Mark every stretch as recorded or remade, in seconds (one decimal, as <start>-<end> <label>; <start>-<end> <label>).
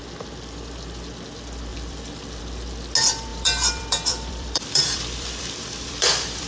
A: 0.0-1.7 recorded; 1.7-2.4 remade; 2.4-3.3 recorded; 3.3-6.5 remade